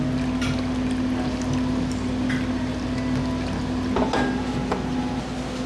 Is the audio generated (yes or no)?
no